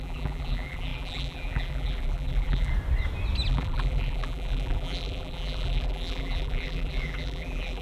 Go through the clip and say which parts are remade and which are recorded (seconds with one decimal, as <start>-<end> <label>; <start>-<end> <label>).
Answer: 0.0-2.7 remade; 2.7-3.5 recorded; 3.5-7.8 remade